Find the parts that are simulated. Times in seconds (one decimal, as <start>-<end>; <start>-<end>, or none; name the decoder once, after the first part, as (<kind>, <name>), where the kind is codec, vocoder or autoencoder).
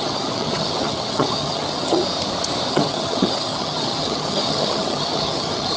0.0-2.0 (vocoder, HiFi-GAN); 2.7-5.8